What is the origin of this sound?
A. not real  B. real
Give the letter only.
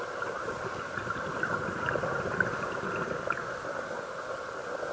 B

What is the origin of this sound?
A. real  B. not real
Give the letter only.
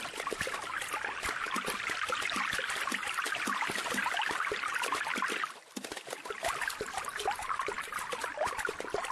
A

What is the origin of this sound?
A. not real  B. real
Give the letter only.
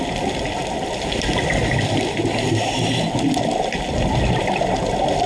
B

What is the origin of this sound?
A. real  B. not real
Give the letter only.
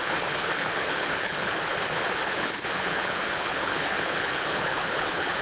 B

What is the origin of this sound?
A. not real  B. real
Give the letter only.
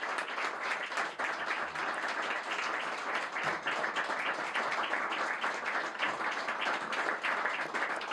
B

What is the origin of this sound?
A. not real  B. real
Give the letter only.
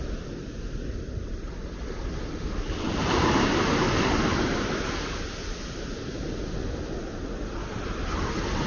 B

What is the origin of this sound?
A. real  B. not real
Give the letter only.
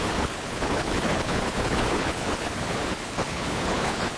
B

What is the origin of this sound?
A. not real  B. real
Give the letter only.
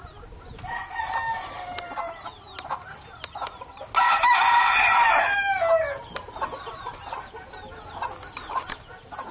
B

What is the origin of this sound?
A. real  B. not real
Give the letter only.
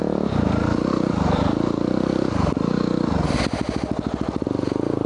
A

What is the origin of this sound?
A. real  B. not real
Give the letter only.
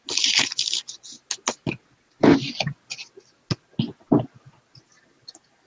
A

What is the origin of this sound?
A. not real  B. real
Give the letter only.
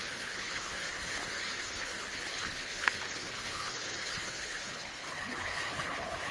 A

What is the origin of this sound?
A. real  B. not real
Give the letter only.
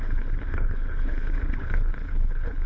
B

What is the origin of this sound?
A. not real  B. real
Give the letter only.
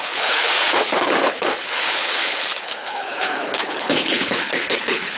A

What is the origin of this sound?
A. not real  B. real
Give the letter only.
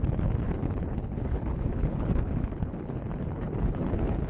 A